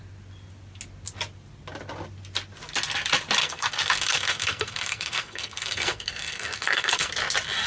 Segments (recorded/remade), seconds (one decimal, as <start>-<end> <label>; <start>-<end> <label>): 0.0-3.4 recorded; 3.4-7.1 remade; 7.1-7.7 recorded